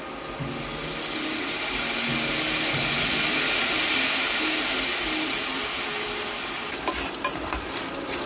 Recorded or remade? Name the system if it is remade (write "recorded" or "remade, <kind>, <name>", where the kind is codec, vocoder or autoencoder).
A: recorded